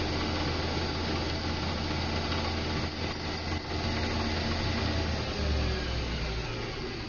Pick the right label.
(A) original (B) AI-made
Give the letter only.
A